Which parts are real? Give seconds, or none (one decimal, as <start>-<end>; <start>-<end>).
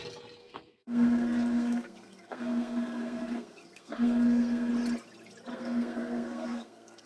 0.0-0.4; 4.7-5.5